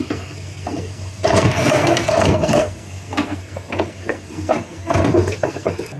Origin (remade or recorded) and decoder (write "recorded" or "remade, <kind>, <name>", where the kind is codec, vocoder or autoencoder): remade, codec, SNAC